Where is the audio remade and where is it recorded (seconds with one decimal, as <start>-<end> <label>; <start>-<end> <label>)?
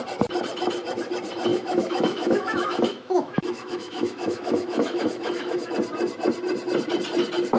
0.0-1.5 recorded; 1.5-5.7 remade; 5.7-7.6 recorded